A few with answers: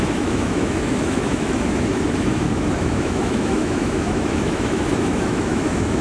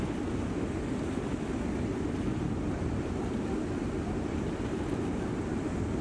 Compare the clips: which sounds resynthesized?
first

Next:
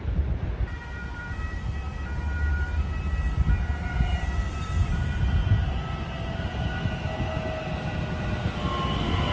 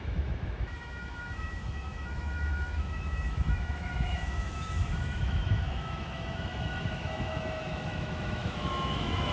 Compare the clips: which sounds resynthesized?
second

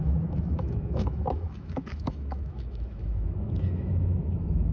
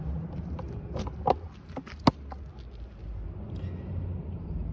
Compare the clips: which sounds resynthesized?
first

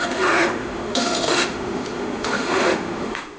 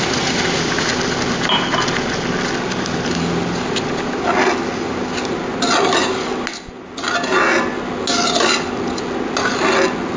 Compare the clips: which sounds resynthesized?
first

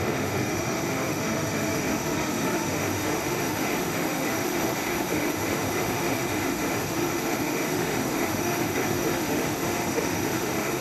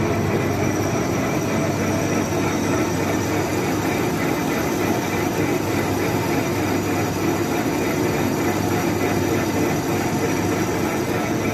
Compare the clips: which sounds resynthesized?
first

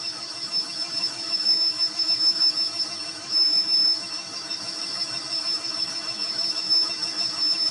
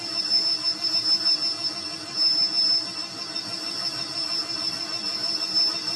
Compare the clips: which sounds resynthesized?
first